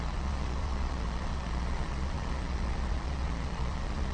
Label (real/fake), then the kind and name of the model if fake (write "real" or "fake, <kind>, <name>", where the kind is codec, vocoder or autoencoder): fake, vocoder, Vocos